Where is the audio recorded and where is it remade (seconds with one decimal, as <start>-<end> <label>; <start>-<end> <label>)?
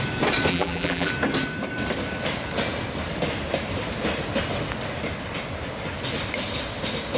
0.0-0.5 recorded; 0.5-1.1 remade; 1.1-7.2 recorded